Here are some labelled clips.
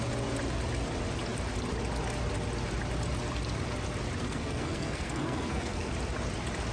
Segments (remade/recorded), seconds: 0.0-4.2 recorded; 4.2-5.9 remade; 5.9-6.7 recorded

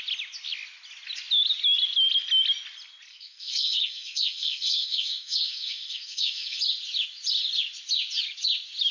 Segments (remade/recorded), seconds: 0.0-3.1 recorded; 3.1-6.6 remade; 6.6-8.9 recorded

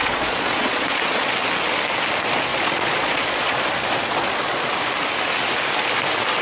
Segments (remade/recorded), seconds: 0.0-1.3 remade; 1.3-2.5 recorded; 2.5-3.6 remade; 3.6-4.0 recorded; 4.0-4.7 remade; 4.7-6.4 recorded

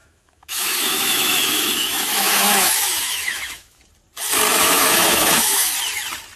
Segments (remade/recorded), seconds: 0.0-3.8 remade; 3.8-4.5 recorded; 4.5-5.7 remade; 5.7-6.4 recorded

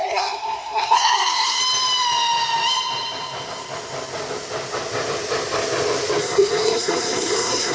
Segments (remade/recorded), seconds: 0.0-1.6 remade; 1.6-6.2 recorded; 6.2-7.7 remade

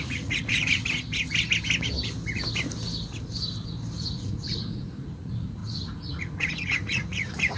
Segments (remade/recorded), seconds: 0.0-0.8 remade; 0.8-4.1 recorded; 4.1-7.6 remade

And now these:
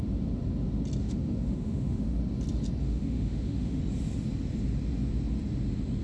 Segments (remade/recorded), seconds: 0.0-1.0 recorded; 1.0-2.0 remade; 2.0-2.8 recorded; 2.8-3.8 remade; 3.8-6.0 recorded

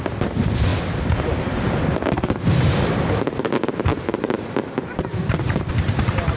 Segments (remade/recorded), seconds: 0.0-3.9 recorded; 3.9-5.7 remade; 5.7-6.4 recorded